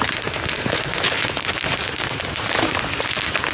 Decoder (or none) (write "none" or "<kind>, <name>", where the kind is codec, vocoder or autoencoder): none